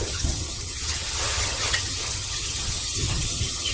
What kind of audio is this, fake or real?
fake